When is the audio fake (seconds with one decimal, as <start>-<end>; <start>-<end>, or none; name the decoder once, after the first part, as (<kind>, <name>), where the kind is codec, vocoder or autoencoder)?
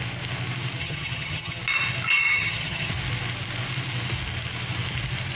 0.8-1.6 (vocoder, HiFi-GAN); 2.2-2.9